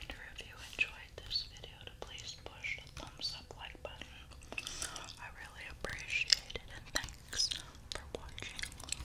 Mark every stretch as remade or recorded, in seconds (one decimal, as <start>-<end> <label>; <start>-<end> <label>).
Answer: 0.0-2.6 recorded; 2.6-3.8 remade; 3.8-5.9 recorded; 5.9-7.0 remade; 7.0-8.2 recorded; 8.2-9.0 remade